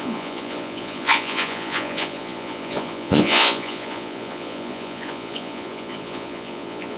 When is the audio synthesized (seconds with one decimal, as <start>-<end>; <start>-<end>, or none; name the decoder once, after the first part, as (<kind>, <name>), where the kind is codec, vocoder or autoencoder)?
0.0-7.0 (vocoder, Vocos)